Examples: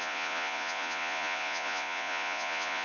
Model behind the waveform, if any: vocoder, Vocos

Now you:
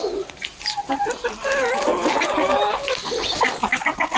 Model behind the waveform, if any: none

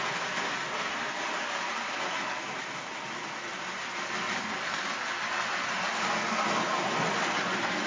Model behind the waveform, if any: none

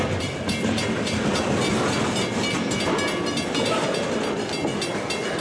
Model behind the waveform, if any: none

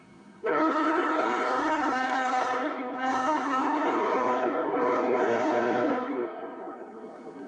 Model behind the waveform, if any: codec, SNAC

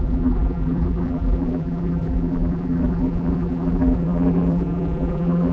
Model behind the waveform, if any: vocoder, BigVGAN v2